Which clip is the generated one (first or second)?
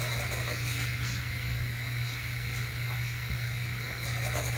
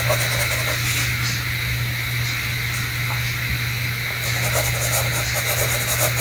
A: first